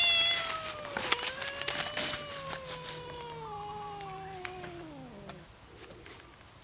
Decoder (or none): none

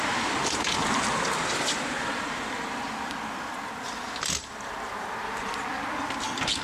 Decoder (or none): vocoder, BigVGAN v2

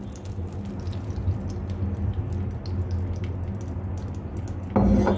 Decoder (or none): none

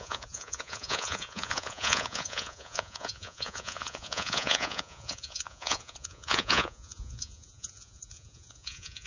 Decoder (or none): vocoder, Vocos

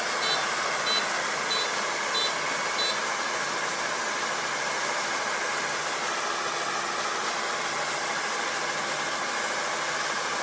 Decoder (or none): none